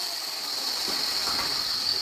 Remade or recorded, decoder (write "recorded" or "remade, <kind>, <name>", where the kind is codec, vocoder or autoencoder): recorded